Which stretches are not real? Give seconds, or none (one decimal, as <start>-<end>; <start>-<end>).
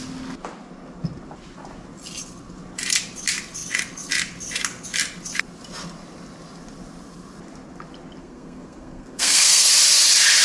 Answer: 8.2-9.7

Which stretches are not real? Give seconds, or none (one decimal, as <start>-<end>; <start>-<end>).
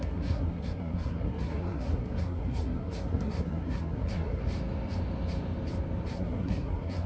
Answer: 0.0-4.4; 6.1-7.1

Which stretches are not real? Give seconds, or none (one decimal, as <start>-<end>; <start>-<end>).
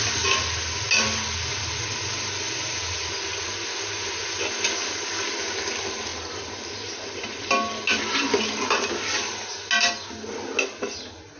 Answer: none